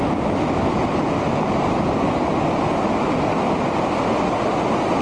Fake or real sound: real